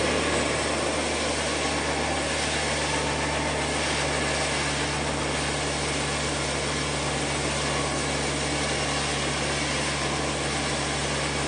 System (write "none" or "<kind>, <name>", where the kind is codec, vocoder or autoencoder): none